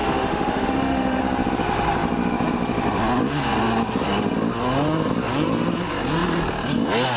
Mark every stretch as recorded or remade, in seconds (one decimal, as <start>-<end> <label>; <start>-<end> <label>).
0.0-1.2 remade; 1.2-7.2 recorded